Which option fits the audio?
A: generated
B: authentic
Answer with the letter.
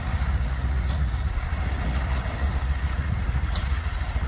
A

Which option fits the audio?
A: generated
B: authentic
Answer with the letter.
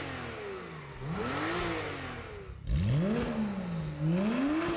B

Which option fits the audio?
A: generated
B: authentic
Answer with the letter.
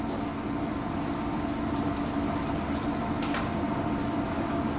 B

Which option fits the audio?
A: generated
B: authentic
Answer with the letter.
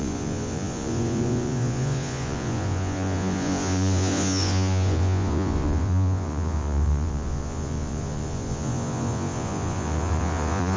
A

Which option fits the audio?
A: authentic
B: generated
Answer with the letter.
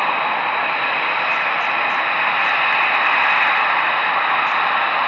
A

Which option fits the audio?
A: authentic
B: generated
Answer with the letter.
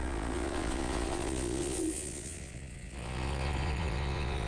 B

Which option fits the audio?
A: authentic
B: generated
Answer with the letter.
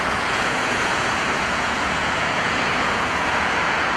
B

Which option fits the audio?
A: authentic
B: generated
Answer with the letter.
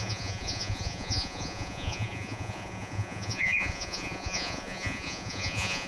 B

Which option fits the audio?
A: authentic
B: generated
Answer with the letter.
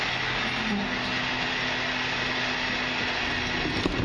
A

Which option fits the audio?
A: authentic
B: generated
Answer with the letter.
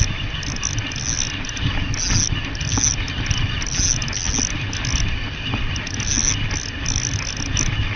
A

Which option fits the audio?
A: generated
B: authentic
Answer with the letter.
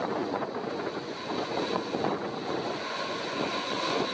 A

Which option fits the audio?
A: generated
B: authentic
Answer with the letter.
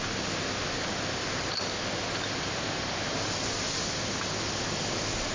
B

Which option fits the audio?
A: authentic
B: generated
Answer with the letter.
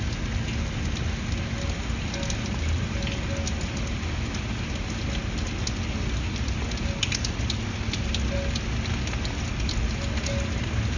A